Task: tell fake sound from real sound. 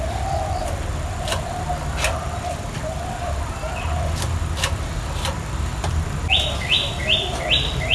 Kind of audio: fake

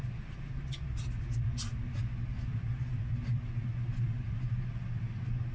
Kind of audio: real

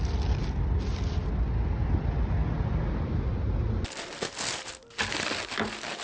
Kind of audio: real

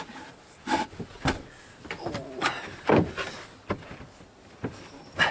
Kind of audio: real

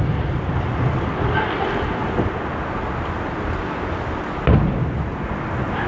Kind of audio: real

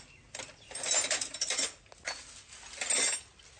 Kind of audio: real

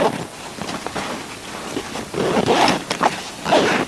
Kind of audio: real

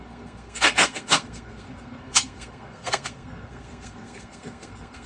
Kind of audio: fake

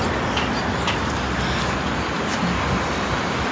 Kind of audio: real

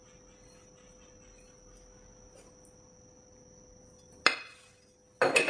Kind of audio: real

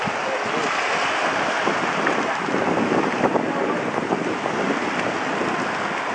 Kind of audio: real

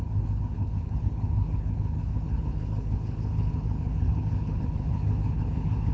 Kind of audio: fake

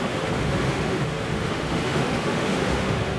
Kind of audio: fake